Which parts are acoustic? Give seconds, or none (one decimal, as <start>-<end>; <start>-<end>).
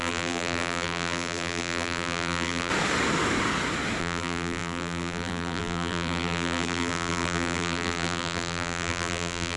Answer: 2.7-4.0